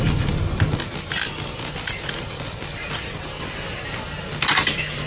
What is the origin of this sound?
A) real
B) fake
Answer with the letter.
A